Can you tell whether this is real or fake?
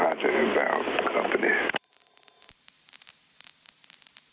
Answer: fake